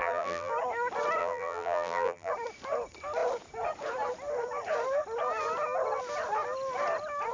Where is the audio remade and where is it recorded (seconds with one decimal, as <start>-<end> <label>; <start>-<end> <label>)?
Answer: 0.0-0.5 remade; 0.5-1.2 recorded; 1.2-2.3 remade; 2.3-7.3 recorded